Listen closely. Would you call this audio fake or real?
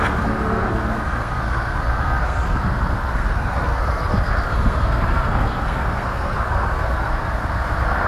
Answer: fake